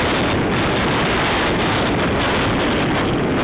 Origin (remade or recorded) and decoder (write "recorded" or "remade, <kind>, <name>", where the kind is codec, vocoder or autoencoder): recorded